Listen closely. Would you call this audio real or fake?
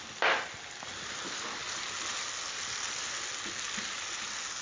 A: real